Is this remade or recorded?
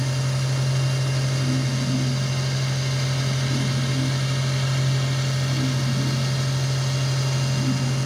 recorded